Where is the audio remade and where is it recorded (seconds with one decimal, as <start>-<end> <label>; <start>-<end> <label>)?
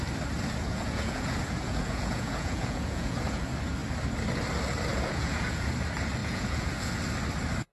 0.0-0.7 recorded; 0.7-3.4 remade; 3.4-4.9 recorded; 4.9-5.7 remade; 5.7-6.2 recorded; 6.2-7.0 remade; 7.0-7.7 recorded